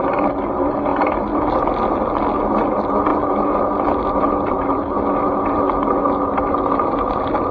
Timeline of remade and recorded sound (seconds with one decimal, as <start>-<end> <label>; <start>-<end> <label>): 0.0-7.5 recorded